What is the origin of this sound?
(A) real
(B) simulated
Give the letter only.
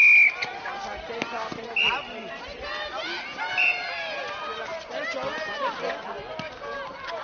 A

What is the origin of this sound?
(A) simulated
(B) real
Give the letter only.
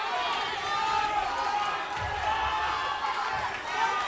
B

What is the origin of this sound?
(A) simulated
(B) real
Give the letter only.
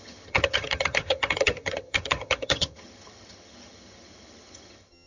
A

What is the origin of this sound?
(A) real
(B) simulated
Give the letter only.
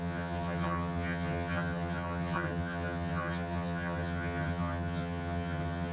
B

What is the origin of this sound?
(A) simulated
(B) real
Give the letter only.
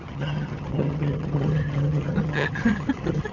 A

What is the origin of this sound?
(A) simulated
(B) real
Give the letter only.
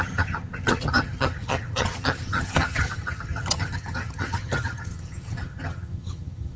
A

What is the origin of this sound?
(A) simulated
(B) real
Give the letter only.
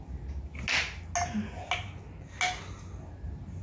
B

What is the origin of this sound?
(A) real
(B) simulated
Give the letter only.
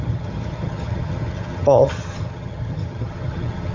B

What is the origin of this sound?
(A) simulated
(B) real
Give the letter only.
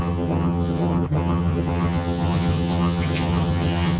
A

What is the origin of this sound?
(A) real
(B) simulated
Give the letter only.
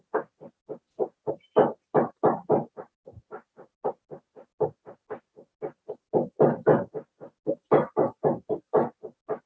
A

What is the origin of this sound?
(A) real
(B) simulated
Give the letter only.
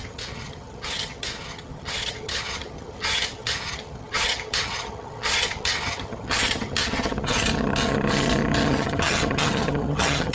B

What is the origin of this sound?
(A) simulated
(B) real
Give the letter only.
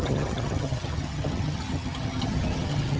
A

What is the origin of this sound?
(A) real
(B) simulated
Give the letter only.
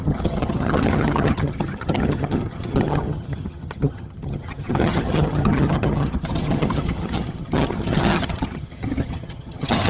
B